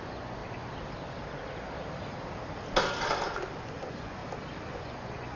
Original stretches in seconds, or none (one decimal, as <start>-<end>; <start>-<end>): 0.4-3.6; 4.2-4.7